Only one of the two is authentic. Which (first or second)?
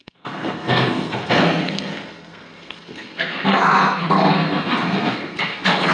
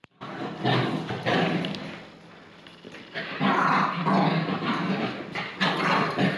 second